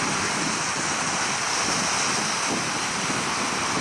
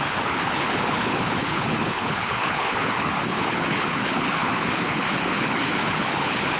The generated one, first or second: second